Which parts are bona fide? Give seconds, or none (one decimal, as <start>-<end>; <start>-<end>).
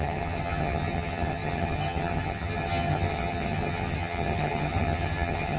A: none